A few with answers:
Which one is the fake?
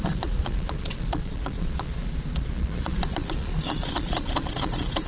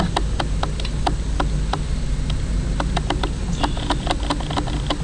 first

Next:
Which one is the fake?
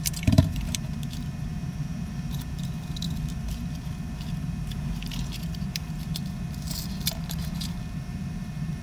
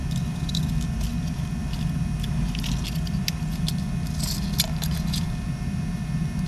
first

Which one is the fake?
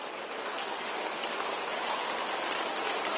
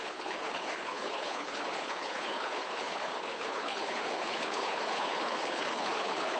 second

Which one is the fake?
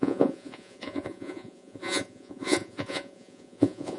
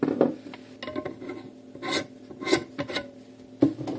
first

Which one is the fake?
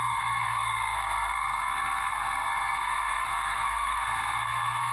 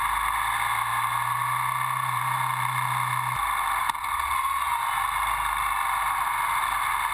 first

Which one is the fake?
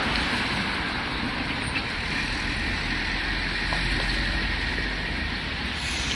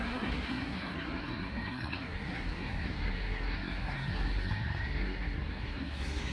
second